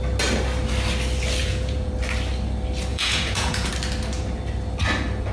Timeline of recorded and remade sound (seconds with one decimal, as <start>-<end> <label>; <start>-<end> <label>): 0.0-1.4 recorded; 1.4-1.9 remade; 1.9-2.9 recorded; 2.9-3.7 remade; 3.7-5.3 recorded